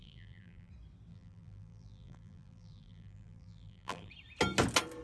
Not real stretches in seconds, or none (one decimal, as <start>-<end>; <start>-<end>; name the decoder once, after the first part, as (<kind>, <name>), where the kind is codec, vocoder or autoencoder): 0.0-0.7 (vocoder, BigVGAN v2); 1.1-4.1